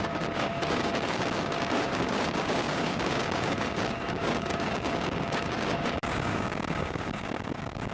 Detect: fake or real fake